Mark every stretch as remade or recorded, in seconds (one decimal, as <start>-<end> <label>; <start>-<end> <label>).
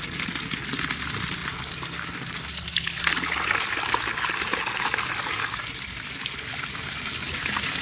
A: 0.0-7.8 recorded